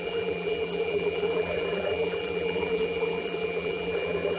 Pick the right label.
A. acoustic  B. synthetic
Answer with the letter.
B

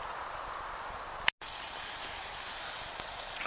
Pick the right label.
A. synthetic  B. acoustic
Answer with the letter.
B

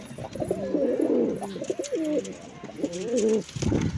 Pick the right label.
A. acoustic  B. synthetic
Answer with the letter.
A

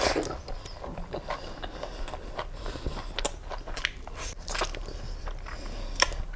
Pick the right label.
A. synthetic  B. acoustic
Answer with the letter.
B